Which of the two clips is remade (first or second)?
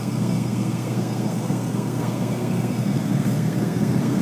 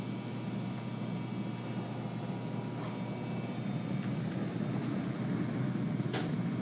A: first